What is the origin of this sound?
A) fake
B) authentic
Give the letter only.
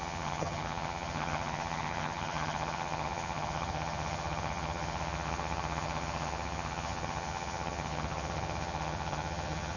A